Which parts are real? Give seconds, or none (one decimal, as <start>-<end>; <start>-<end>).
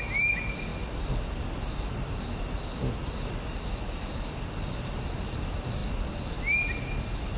0.0-7.4